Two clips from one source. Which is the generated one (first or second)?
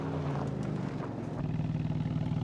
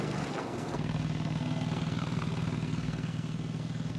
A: second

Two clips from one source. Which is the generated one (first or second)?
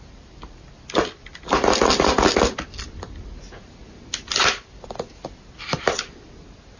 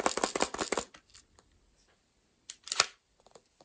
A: second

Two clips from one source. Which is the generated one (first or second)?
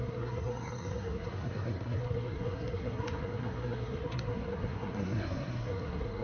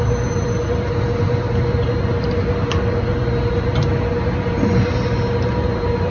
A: first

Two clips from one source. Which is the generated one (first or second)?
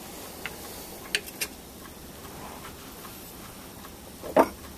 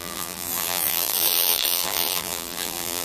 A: second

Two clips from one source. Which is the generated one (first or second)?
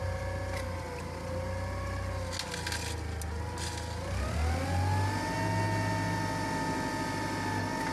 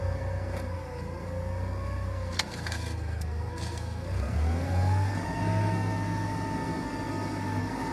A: second